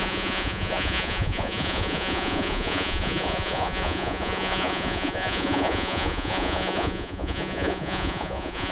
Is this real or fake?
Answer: fake